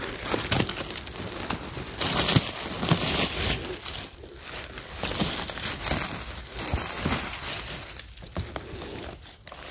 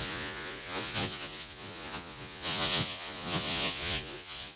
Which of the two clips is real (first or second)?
first